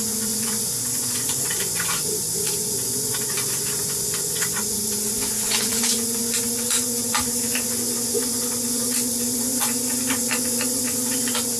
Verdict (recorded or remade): remade